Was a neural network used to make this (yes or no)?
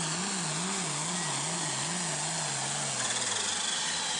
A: no